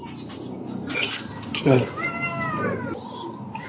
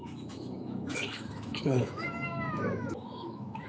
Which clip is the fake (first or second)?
second